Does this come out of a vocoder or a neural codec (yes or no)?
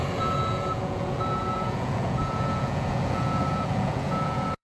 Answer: yes